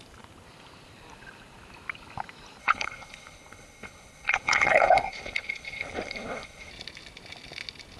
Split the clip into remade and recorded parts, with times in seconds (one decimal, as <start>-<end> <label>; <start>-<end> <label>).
0.0-2.6 recorded; 2.6-6.7 remade; 6.7-8.0 recorded